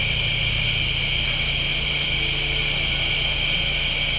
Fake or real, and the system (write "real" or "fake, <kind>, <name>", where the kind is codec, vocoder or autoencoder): real